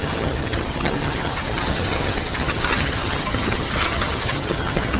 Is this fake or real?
fake